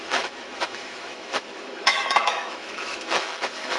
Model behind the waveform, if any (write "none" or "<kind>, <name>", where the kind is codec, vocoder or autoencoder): autoencoder, DAC-VAE